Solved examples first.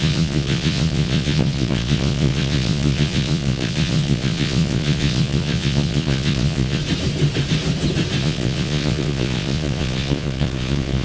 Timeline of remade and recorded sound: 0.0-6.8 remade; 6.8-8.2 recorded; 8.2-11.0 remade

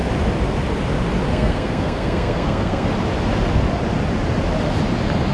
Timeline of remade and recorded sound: 0.0-1.3 recorded; 1.3-2.9 remade; 2.9-5.3 recorded

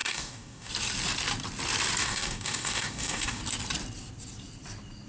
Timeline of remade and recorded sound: 0.0-0.7 remade; 0.7-2.0 recorded; 2.0-3.4 remade; 3.4-5.1 recorded

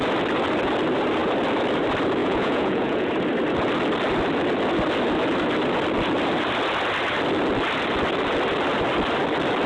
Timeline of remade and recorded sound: 0.0-2.2 recorded; 2.2-3.1 remade; 3.1-9.7 recorded

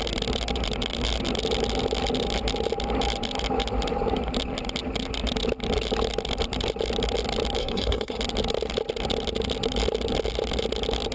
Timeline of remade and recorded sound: 0.0-7.6 recorded; 7.6-8.2 remade; 8.2-11.1 recorded

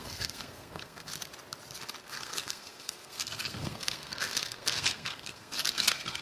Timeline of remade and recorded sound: 0.0-1.1 remade; 1.1-2.0 recorded; 2.0-6.2 remade

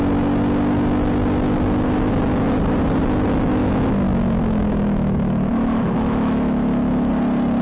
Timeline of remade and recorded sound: 0.0-3.6 recorded; 3.6-7.1 remade; 7.1-7.6 recorded

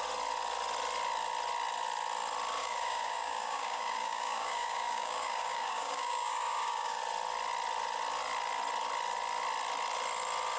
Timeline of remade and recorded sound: 0.0-2.6 recorded; 2.6-7.0 remade; 7.0-10.6 recorded